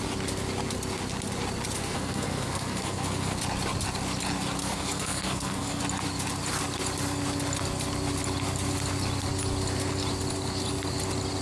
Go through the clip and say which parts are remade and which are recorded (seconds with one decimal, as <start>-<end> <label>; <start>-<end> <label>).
0.0-1.8 recorded; 1.8-3.4 remade; 3.4-4.6 recorded; 4.6-5.8 remade; 5.8-11.4 recorded